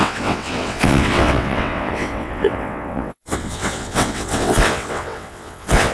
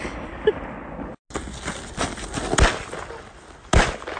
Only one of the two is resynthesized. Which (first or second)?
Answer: first